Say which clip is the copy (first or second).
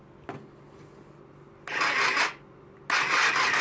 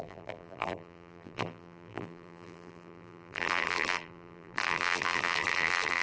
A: second